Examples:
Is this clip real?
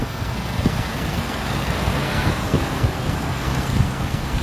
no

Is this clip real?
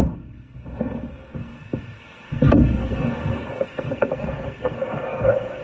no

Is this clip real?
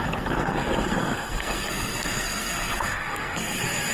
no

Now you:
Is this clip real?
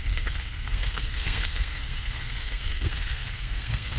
no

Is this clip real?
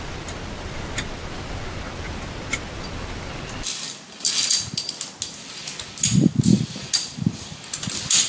yes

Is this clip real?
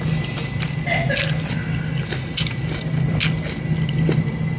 yes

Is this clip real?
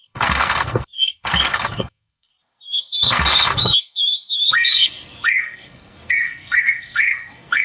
no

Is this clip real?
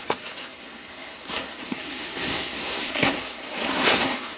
no